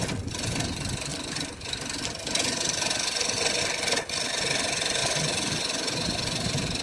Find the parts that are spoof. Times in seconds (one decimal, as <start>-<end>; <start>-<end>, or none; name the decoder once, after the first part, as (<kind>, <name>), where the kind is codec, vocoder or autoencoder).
none